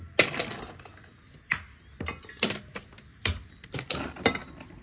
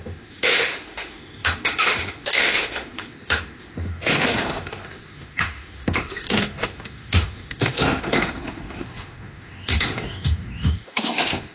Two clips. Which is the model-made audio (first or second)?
second